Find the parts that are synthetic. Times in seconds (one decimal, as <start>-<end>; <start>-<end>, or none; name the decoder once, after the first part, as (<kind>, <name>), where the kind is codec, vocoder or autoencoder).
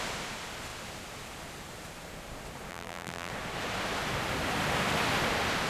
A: 2.7-3.3 (vocoder, BigVGAN v2)